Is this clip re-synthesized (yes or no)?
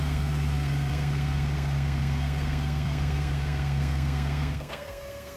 yes